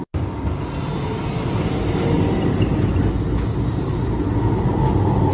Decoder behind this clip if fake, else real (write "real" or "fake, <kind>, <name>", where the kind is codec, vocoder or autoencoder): real